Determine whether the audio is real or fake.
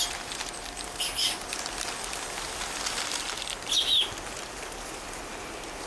real